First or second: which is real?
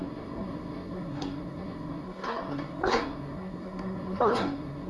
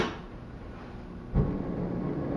second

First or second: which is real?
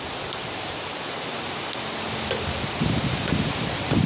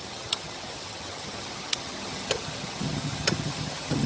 first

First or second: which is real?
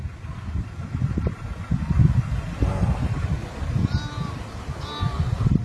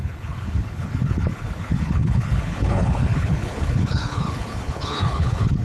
first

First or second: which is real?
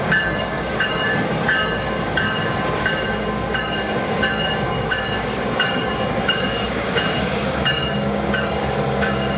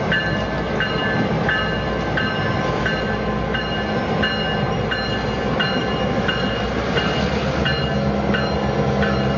second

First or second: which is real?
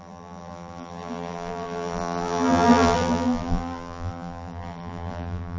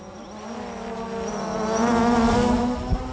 second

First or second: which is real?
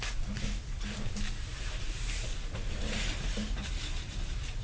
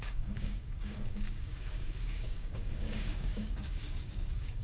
first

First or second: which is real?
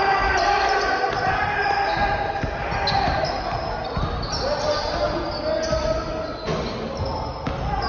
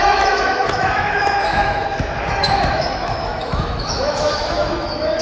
first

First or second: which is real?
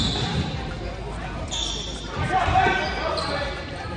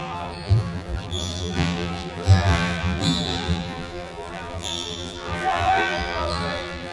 first